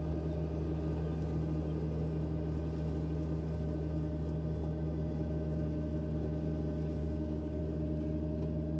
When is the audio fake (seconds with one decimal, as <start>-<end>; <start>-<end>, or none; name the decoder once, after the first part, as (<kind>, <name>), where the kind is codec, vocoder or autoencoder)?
7.0-7.6 (codec, DAC)